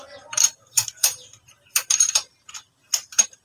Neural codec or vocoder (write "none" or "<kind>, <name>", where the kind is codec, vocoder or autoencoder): vocoder, BigVGAN v2